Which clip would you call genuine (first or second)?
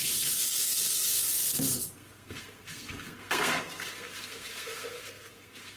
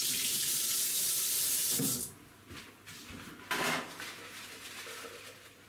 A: second